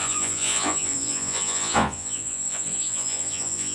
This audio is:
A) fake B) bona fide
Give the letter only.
A